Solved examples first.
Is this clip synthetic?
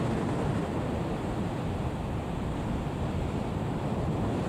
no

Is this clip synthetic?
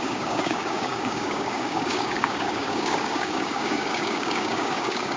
yes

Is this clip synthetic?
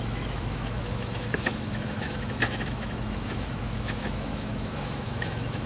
yes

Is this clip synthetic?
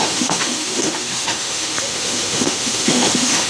yes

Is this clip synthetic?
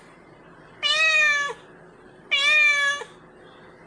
no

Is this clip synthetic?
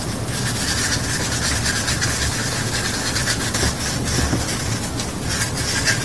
no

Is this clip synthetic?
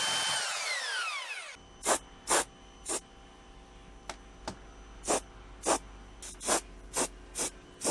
no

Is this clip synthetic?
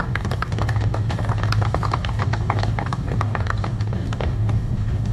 yes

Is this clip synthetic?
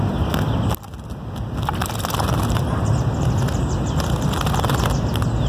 no